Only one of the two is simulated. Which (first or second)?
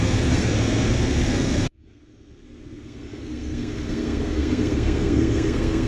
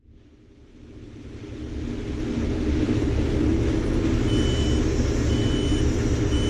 first